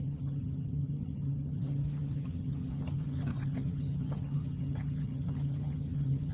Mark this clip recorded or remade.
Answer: remade